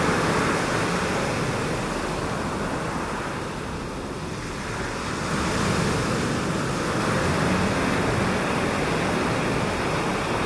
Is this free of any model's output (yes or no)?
yes